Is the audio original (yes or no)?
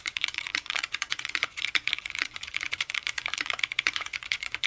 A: no